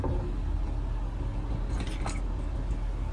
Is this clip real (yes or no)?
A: yes